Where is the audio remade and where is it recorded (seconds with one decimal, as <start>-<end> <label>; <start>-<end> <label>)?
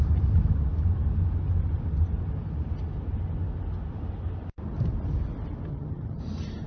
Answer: 0.0-5.7 recorded; 5.7-6.2 remade; 6.2-6.7 recorded